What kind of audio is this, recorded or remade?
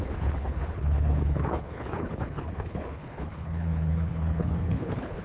remade